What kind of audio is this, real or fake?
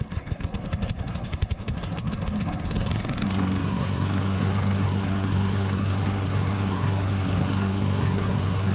fake